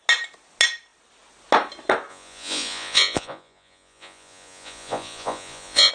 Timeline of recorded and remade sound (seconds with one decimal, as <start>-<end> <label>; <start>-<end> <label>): 0.0-2.1 recorded; 2.1-5.9 remade